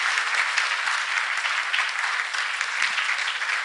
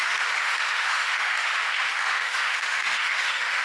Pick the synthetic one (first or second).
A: second